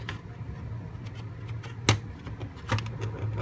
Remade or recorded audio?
recorded